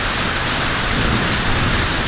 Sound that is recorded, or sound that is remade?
recorded